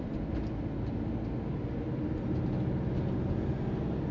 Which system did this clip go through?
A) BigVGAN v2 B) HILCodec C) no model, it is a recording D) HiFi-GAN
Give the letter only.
C